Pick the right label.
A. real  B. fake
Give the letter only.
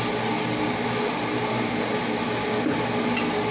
A